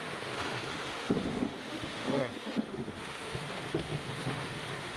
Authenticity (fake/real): fake